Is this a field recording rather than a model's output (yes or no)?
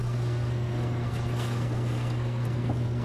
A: no